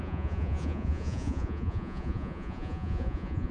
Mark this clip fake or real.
fake